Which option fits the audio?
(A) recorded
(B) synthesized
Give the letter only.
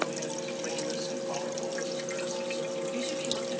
A